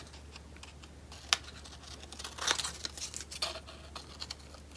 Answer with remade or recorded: recorded